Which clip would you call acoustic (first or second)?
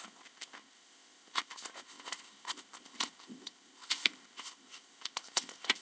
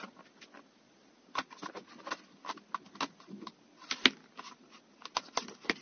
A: second